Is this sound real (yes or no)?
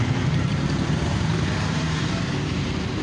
no